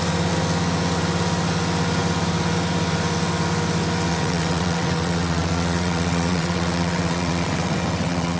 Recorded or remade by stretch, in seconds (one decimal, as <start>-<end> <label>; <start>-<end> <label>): 0.0-4.1 recorded; 4.1-8.4 remade